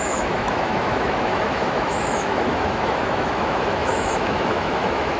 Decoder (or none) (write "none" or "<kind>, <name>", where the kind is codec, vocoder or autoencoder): autoencoder, DAC-VAE